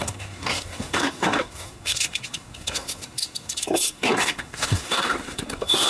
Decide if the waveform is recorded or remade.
remade